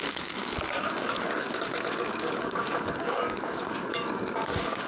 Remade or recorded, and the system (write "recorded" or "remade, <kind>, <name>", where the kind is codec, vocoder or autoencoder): remade, codec, DAC